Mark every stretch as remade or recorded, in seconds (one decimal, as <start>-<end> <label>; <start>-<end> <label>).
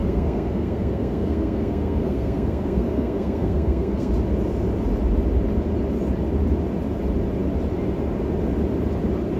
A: 0.0-4.1 remade; 4.1-9.4 recorded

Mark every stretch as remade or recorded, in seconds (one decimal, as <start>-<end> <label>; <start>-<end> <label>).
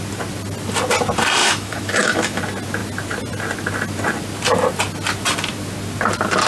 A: 0.0-1.4 recorded; 1.4-2.4 remade; 2.4-6.5 recorded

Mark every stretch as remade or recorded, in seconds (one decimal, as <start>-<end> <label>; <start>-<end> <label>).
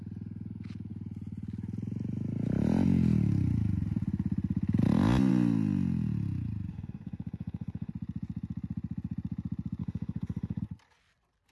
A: 0.0-6.7 recorded; 6.7-7.9 remade; 7.9-9.8 recorded; 9.8-10.6 remade; 10.6-11.5 recorded